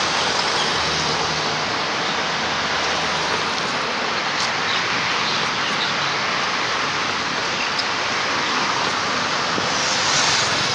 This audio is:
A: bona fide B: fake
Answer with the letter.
A